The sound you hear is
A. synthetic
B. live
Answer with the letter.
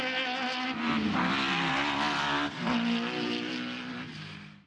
B